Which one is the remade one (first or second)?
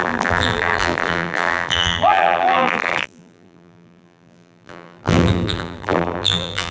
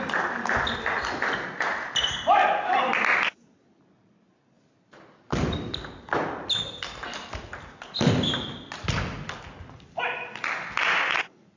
first